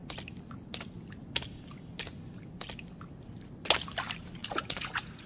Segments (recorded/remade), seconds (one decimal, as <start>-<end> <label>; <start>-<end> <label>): 0.0-4.4 recorded; 4.4-5.3 remade